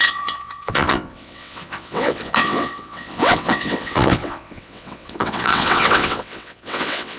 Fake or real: fake